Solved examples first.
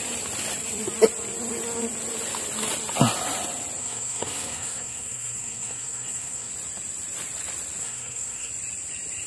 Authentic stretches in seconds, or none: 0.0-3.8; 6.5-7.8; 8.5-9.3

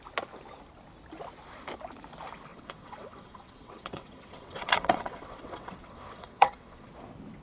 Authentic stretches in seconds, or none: 0.0-2.5; 6.9-7.4

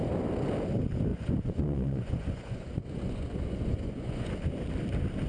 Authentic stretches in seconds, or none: 0.0-1.1; 4.3-5.3

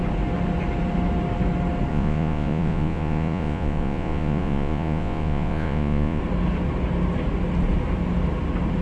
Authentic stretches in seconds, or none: 0.0-1.9; 6.2-8.8

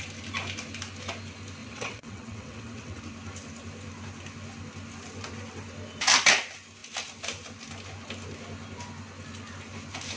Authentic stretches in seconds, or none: 0.0-1.6; 3.0-10.2

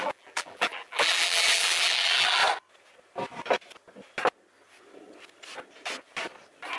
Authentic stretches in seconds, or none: 2.4-6.8

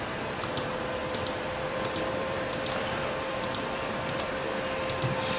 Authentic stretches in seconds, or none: 0.0-1.0; 4.2-5.4